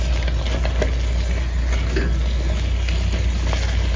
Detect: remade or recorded recorded